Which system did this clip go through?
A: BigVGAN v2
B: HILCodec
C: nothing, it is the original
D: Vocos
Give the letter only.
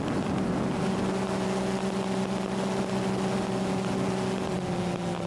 C